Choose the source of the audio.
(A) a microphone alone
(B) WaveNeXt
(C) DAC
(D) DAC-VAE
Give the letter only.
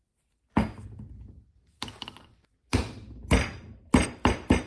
A